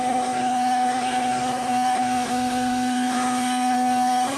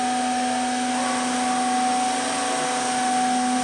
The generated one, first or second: first